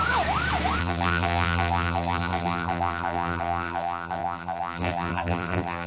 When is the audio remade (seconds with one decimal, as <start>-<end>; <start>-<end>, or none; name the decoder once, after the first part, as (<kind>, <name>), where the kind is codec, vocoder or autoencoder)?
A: 0.8-5.9 (vocoder, BigVGAN v2)